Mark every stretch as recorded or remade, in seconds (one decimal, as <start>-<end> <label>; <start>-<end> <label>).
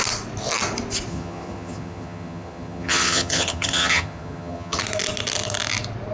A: 0.0-1.1 recorded; 1.1-4.8 remade; 4.8-6.1 recorded